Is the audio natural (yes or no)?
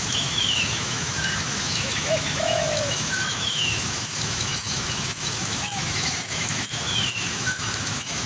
no